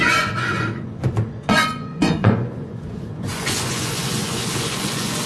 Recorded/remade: remade